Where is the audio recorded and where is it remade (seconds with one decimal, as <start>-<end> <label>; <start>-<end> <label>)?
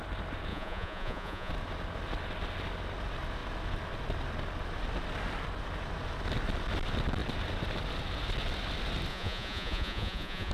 0.0-0.5 recorded; 0.5-1.5 remade; 1.5-9.1 recorded; 9.1-10.5 remade